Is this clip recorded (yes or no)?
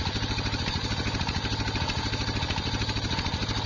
yes